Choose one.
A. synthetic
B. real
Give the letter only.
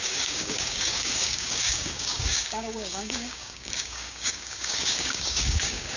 A